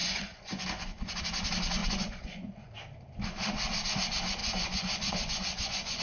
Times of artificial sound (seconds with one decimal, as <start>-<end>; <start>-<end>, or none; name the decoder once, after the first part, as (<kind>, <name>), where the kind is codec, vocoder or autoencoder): 0.0-1.2 (vocoder, Vocos); 1.8-2.7; 4.4-6.0

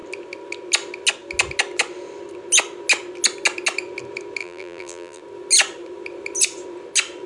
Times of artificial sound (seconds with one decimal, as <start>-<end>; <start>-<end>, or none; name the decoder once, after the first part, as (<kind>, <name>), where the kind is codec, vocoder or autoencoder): 4.4-5.2 (vocoder, BigVGAN v2)

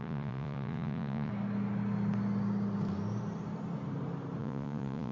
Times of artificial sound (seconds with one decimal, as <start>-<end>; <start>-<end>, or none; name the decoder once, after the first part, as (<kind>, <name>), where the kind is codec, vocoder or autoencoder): 0.0-1.3 (vocoder, Vocos); 4.4-5.1